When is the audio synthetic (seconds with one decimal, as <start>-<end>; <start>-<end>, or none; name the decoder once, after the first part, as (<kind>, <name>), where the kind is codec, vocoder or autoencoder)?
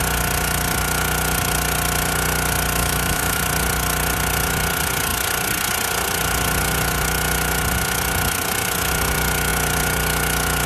2.8-3.4 (autoencoder, DAC-VAE)